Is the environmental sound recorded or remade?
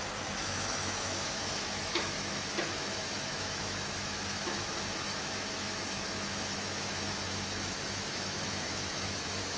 remade